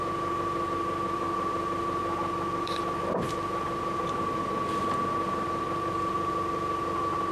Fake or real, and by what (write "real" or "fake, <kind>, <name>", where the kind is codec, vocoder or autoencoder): real